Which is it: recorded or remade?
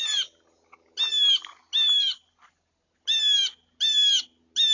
recorded